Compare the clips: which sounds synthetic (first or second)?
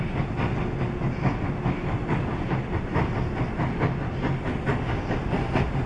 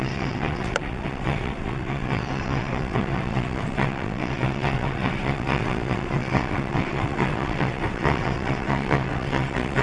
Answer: second